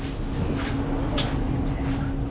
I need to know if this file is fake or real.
real